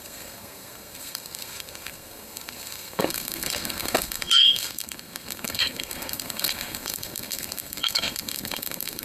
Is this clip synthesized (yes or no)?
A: yes